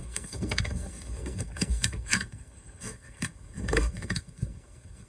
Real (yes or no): no